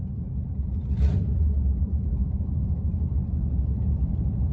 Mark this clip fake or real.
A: fake